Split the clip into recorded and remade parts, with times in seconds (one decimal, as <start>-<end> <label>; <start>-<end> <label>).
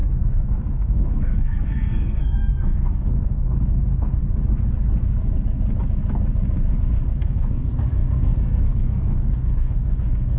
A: 0.0-4.2 remade; 4.2-7.2 recorded; 7.2-10.4 remade